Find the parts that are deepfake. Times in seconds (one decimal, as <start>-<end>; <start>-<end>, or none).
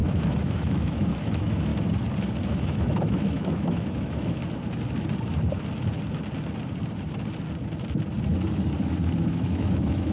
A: 0.0-1.7; 2.5-4.4; 9.2-10.1